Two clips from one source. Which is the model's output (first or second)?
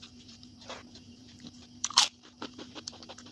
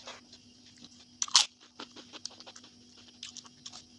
first